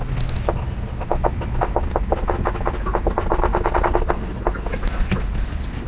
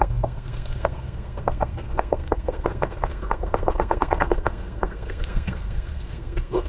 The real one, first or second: first